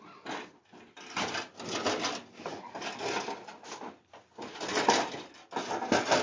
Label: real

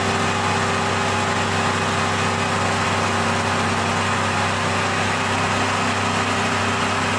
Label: real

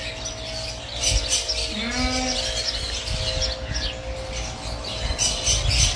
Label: real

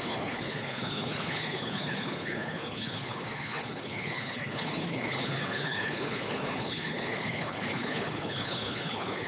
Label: fake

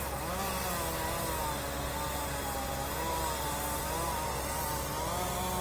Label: real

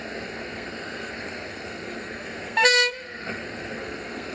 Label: fake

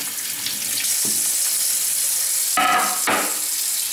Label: real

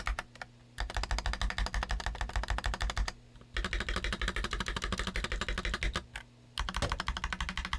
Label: real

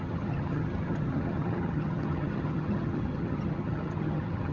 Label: fake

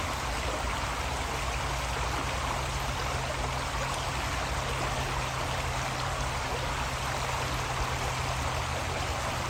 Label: real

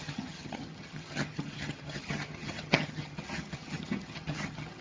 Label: fake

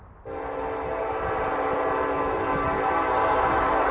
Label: real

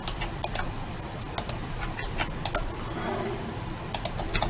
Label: real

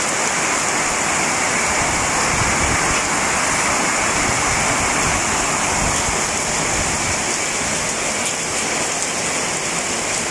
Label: real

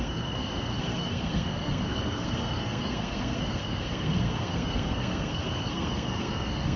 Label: fake